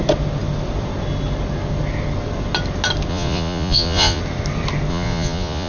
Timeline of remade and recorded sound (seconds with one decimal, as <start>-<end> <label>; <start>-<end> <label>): 0.0-3.1 recorded; 3.1-4.2 remade; 4.2-4.9 recorded; 4.9-5.7 remade